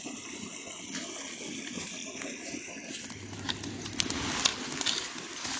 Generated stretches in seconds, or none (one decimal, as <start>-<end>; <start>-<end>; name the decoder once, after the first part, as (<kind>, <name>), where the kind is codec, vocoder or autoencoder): none